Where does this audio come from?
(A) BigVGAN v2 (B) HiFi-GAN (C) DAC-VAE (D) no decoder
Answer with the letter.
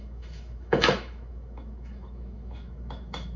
C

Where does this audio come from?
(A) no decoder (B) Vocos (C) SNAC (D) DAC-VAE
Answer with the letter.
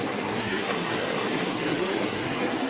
C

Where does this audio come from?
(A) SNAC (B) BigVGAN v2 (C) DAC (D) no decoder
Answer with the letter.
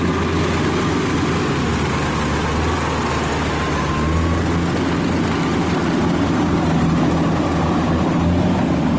D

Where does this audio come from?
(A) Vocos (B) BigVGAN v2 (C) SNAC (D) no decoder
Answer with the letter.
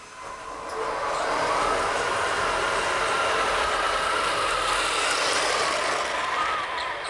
D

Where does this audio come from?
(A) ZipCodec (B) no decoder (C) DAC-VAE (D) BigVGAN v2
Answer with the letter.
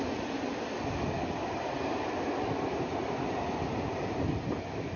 B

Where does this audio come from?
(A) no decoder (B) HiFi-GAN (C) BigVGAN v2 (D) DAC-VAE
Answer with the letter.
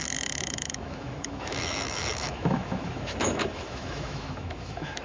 D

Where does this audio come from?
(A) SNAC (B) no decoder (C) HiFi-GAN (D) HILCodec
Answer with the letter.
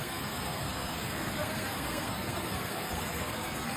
A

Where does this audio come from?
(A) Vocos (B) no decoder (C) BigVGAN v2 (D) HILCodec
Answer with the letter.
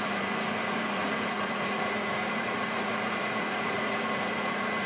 A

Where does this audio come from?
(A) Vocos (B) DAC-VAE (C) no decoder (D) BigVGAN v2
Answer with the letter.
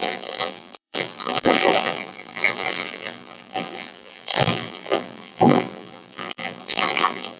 D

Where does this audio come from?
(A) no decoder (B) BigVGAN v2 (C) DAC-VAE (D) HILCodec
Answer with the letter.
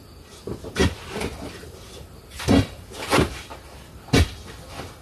A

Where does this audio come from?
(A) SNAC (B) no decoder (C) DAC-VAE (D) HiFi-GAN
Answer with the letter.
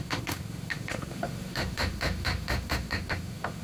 C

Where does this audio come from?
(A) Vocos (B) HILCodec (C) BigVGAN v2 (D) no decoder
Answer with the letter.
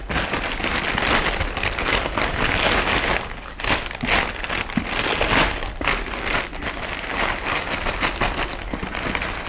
D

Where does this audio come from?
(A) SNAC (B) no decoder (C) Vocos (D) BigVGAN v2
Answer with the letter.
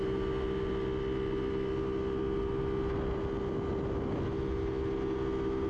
B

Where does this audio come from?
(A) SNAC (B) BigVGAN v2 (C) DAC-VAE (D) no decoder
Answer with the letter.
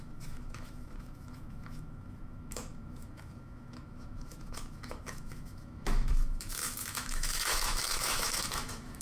C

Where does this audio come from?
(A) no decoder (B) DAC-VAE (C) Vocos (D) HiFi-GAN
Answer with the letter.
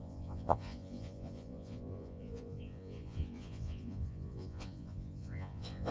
C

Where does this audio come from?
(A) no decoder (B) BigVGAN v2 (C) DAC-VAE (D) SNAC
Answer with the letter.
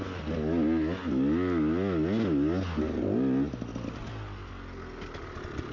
A